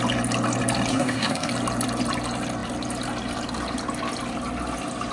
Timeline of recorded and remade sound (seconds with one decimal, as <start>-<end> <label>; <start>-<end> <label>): 0.0-0.9 recorded; 0.9-1.5 remade; 1.5-5.1 recorded